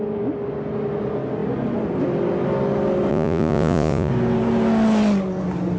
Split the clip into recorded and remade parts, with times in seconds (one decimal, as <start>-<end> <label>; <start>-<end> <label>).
0.0-3.1 recorded; 3.1-4.1 remade; 4.1-5.8 recorded

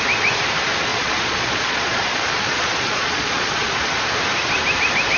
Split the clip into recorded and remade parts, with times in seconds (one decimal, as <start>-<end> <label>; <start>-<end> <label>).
0.0-0.9 recorded; 0.9-4.0 remade; 4.0-5.2 recorded